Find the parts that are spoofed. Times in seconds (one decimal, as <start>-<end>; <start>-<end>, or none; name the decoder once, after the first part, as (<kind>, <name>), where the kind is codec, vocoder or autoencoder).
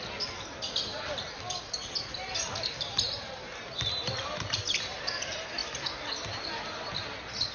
none